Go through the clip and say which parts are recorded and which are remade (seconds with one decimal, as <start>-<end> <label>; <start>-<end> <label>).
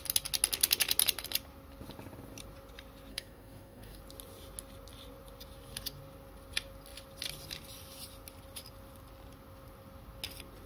0.0-3.1 recorded; 3.1-4.0 remade; 4.0-10.7 recorded